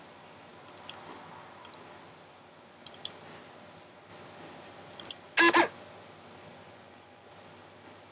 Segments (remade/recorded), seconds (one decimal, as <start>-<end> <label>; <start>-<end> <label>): 0.0-6.5 recorded; 6.5-7.3 remade; 7.3-8.1 recorded